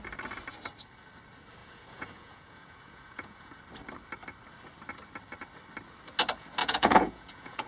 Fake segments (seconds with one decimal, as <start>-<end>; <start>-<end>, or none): 1.6-3.6; 6.6-7.7